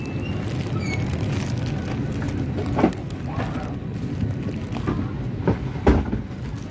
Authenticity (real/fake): real